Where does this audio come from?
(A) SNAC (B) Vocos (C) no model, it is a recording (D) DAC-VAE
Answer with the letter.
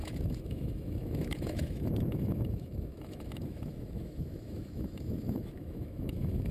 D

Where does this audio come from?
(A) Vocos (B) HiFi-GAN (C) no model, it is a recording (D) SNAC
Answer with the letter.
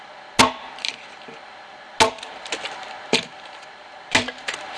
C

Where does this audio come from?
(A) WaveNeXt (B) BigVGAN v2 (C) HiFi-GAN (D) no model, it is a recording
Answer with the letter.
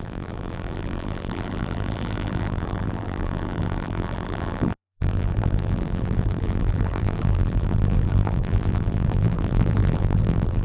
B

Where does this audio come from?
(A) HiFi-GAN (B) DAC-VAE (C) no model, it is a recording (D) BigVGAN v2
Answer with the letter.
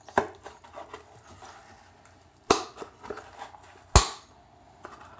C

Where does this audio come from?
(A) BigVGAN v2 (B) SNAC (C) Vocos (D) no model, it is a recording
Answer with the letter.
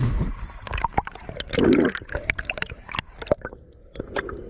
D